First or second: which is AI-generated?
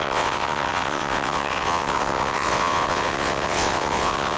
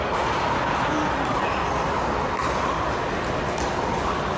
first